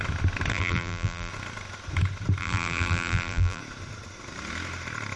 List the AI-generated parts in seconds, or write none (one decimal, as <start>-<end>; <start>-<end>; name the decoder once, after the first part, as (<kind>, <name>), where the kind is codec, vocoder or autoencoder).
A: 0.5-1.3 (vocoder, BigVGAN v2); 2.4-3.6